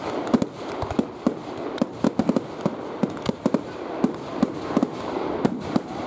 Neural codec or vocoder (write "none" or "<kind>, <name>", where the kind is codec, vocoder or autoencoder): none